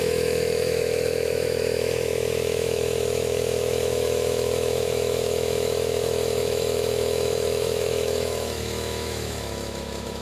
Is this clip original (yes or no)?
no